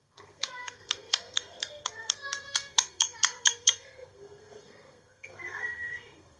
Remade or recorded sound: remade